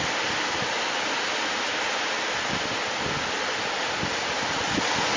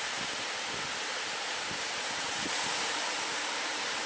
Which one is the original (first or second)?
first